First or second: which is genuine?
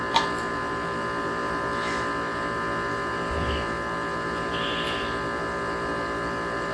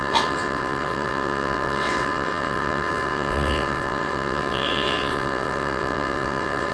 first